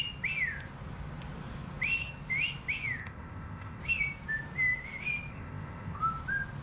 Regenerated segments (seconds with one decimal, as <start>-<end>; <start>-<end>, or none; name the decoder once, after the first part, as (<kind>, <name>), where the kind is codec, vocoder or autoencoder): 3.0-3.8 (codec, ZipCodec); 5.3-6.0